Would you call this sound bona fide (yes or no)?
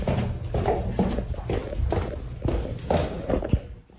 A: yes